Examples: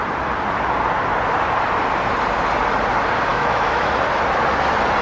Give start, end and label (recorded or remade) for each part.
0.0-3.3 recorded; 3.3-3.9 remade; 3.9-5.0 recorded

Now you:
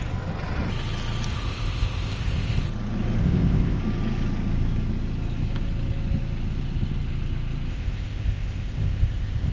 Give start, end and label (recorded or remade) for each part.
0.0-1.3 recorded; 1.3-2.6 remade; 2.6-3.2 recorded; 3.2-3.8 remade; 3.8-7.7 recorded; 7.7-9.5 remade

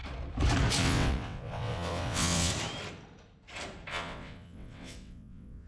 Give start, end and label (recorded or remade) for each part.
0.0-0.8 recorded; 0.8-2.5 remade; 2.5-3.9 recorded; 3.9-5.7 remade

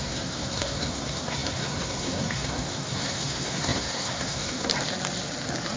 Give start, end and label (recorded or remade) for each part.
0.0-4.7 remade; 4.7-5.8 recorded

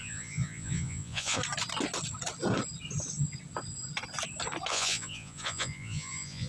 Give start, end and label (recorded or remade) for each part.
0.0-1.4 remade; 1.4-4.7 recorded; 4.7-6.5 remade